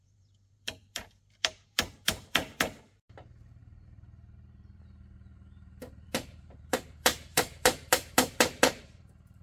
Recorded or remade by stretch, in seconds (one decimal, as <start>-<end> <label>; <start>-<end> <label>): 0.0-9.4 remade